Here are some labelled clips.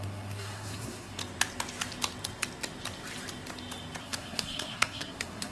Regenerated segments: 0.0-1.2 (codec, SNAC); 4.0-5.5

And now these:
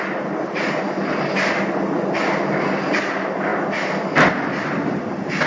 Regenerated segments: none

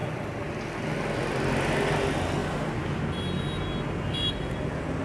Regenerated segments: none

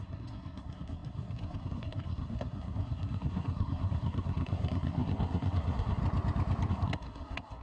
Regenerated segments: 0.0-6.0 (codec, SNAC); 6.7-7.6